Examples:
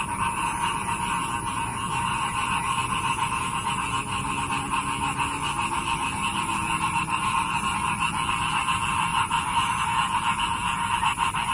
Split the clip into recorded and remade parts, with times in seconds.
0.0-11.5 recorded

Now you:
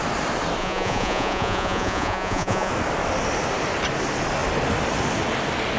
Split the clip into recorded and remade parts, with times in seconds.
0.0-0.6 recorded; 0.6-2.7 remade; 2.7-5.8 recorded

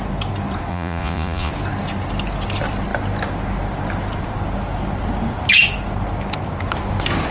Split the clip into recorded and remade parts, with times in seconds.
0.0-0.7 recorded; 0.7-1.5 remade; 1.5-7.3 recorded

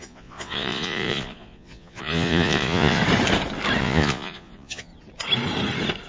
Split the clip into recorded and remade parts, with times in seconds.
0.0-3.0 remade; 3.0-3.8 recorded; 3.8-4.9 remade; 4.9-6.1 recorded

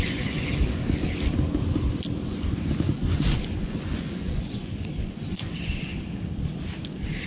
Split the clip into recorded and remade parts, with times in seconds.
0.0-0.8 remade; 0.8-2.3 recorded; 2.3-5.9 remade; 5.9-7.3 recorded

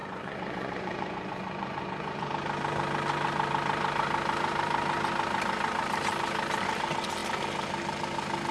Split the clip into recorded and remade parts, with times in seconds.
0.0-2.3 remade; 2.3-8.5 recorded